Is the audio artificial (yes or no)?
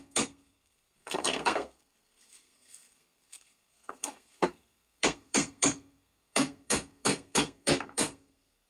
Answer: yes